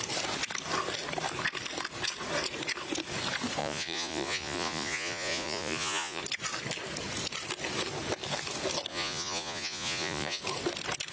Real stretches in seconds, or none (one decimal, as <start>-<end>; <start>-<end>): 0.0-3.6; 6.2-8.9; 10.4-11.1